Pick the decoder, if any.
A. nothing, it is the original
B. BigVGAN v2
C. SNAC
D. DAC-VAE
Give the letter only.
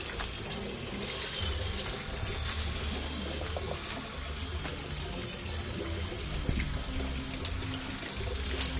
A